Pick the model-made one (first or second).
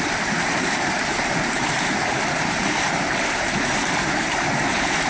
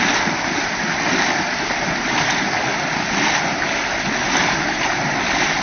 first